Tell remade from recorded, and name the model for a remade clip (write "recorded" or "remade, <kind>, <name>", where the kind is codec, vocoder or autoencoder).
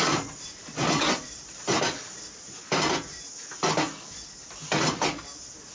recorded